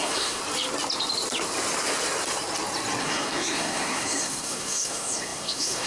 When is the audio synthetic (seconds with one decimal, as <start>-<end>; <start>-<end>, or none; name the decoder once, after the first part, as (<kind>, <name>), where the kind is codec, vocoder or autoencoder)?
0.0-0.4 (codec, SNAC); 3.0-5.9

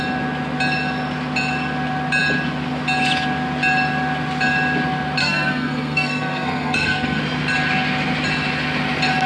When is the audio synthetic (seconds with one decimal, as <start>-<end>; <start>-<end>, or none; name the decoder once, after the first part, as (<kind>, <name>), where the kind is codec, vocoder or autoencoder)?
5.2-7.2 (codec, SNAC)